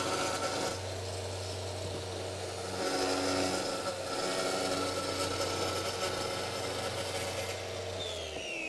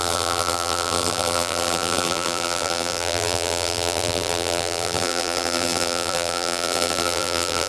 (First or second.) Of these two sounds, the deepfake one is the second